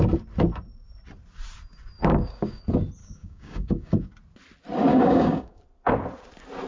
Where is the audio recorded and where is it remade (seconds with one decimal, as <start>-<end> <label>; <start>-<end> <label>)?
0.0-2.0 recorded; 2.0-2.6 remade; 2.6-3.0 recorded; 3.0-4.1 remade; 4.1-4.9 recorded; 4.9-5.6 remade; 5.6-6.7 recorded